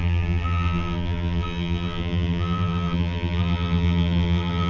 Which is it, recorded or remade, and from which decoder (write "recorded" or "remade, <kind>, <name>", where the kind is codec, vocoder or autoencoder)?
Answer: remade, vocoder, BigVGAN v2